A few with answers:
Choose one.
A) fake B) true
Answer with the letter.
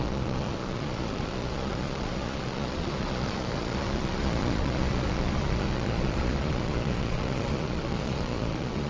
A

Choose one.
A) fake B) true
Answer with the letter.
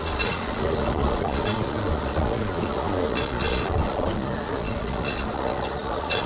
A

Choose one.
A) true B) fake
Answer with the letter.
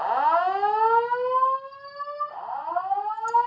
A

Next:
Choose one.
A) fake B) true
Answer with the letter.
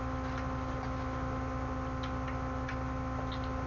B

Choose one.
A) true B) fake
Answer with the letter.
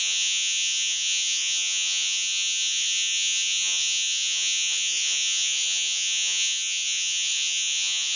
B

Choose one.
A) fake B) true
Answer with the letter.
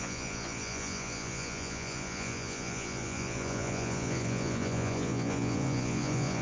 A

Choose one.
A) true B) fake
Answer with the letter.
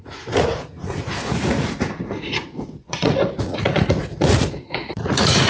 B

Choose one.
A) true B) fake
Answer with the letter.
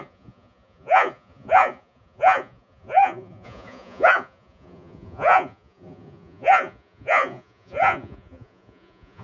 B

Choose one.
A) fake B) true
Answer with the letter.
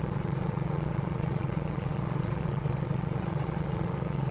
A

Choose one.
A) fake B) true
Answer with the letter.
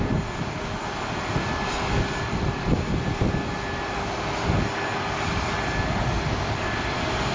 B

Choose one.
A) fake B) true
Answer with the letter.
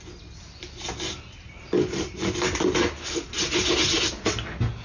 B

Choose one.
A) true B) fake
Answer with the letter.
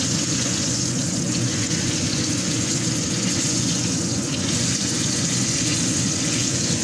B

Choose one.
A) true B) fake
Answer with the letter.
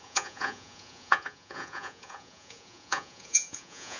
B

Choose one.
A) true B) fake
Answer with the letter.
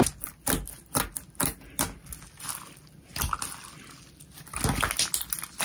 A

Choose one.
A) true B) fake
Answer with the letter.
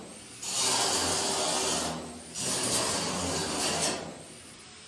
A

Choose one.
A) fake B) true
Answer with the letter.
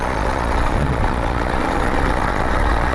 A